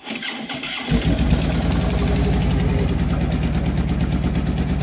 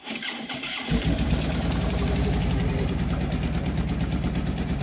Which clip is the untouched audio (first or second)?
first